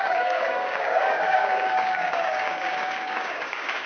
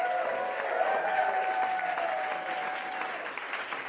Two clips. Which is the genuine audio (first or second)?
second